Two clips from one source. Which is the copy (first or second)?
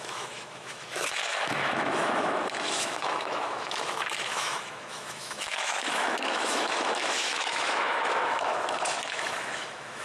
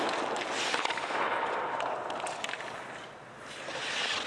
first